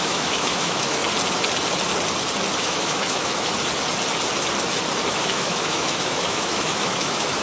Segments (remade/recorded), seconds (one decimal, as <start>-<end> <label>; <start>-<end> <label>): 0.0-1.0 remade; 1.0-2.6 recorded; 2.6-3.5 remade; 3.5-5.1 recorded; 5.1-7.4 remade